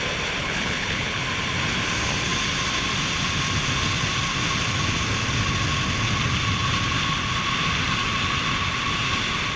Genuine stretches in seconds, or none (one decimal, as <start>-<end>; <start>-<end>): 0.0-0.4; 1.2-9.6